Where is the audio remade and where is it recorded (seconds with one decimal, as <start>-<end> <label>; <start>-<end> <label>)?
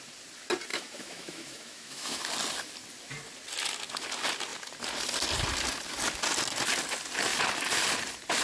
0.0-0.7 recorded; 0.7-2.2 remade; 2.2-8.4 recorded